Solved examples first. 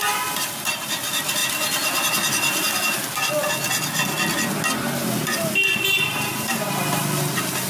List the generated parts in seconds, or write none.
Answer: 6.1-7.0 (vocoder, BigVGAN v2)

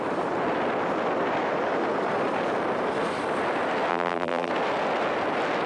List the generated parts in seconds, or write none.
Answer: 3.9-4.5 (vocoder, BigVGAN v2)

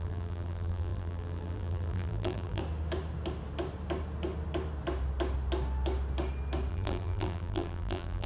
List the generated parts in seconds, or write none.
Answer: 0.0-2.6 (vocoder, BigVGAN v2); 6.7-8.3

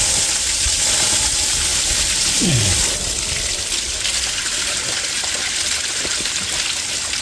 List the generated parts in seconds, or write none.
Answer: 1.7-3.4 (vocoder, BigVGAN v2); 4.1-4.9

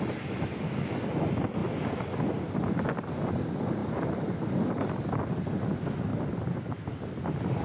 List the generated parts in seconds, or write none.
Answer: 3.8-4.7 (vocoder, BigVGAN v2); 6.1-7.1